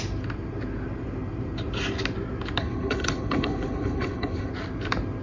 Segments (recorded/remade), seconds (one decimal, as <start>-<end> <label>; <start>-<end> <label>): 0.0-2.6 recorded; 2.6-4.5 remade; 4.5-5.2 recorded